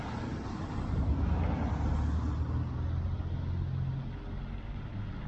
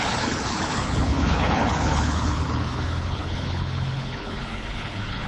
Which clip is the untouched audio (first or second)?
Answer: first